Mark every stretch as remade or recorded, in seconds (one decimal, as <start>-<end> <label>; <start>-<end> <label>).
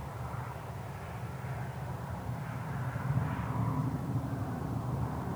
0.0-3.2 remade; 3.2-3.8 recorded; 3.8-5.4 remade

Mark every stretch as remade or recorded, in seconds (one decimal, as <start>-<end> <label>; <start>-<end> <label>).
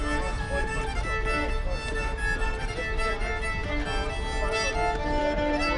0.0-5.8 recorded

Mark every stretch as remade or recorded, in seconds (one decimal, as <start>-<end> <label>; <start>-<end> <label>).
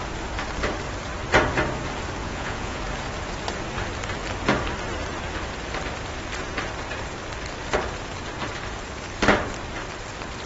0.0-2.2 recorded; 2.2-2.8 remade; 2.8-10.5 recorded